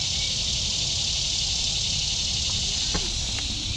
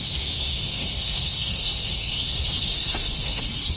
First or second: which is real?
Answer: first